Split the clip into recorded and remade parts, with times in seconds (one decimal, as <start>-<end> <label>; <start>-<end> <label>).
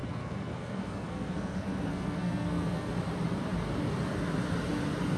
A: 0.0-2.9 remade; 2.9-5.2 recorded